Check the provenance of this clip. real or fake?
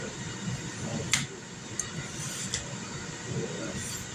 real